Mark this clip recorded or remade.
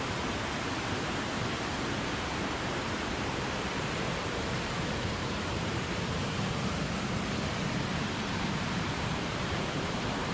remade